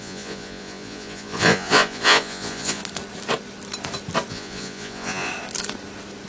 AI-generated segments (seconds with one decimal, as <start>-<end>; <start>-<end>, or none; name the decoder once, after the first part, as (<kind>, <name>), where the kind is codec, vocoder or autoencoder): 0.0-2.8 (vocoder, Vocos); 4.3-5.3